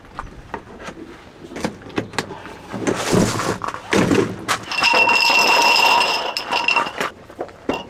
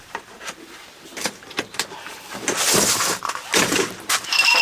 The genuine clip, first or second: first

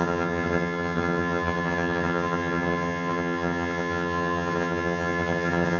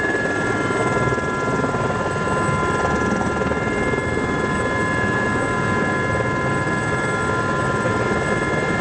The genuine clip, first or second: second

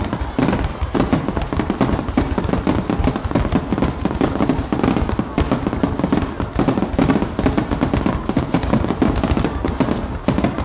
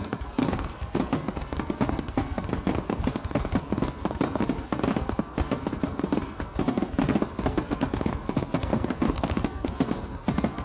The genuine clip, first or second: first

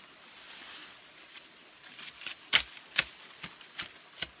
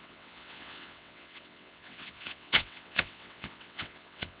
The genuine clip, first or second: first